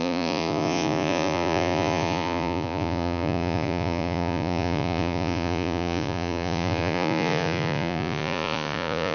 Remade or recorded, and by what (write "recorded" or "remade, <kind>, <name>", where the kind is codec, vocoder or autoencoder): remade, vocoder, Vocos